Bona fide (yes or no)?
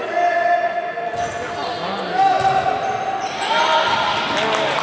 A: yes